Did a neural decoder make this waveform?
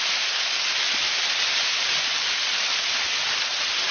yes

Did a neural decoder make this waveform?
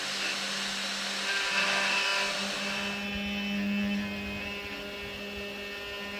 no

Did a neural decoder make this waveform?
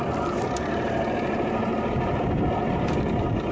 no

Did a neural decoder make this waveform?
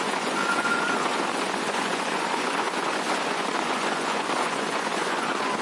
yes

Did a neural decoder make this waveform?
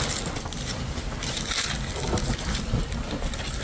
no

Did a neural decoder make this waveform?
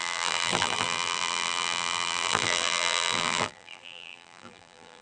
yes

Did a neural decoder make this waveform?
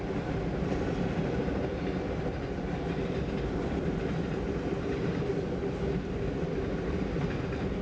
no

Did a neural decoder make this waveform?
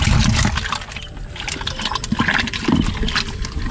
no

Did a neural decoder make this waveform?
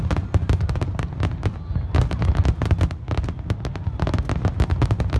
no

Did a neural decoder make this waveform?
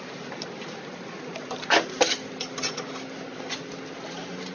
no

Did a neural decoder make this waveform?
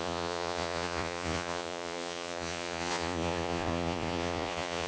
yes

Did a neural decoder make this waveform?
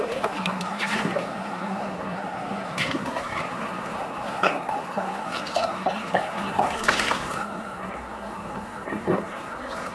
yes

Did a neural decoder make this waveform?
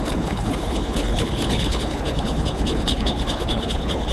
yes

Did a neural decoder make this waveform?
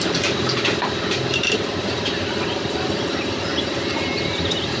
yes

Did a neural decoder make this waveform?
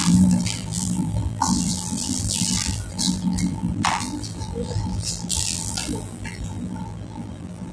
yes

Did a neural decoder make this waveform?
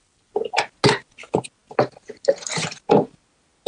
no